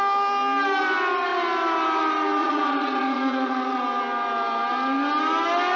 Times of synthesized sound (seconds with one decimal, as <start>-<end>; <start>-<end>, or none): 2.4-3.8

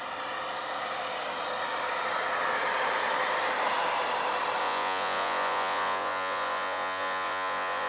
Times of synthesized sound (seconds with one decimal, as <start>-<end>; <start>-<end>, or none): 4.6-7.9

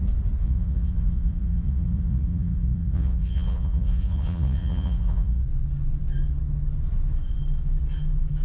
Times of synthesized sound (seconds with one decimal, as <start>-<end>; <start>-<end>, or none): 0.4-5.4

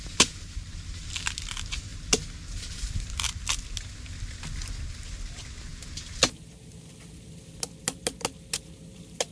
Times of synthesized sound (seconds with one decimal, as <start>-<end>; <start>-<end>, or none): none